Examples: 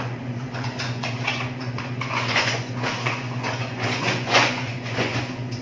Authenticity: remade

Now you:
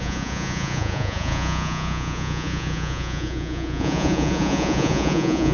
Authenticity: remade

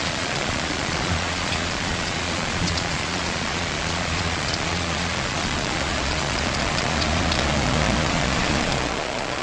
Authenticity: remade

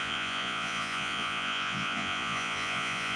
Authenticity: remade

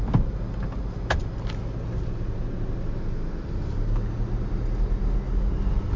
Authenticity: recorded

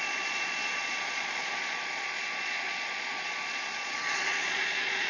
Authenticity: remade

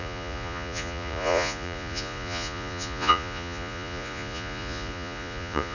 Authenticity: remade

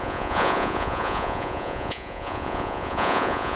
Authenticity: remade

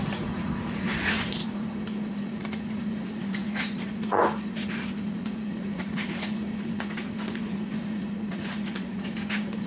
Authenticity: remade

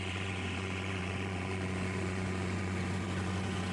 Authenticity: remade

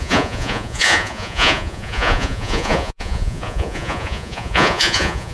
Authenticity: remade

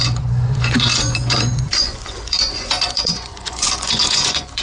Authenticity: remade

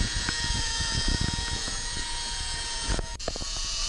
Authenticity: remade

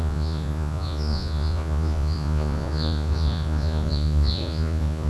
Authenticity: remade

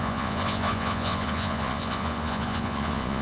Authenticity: remade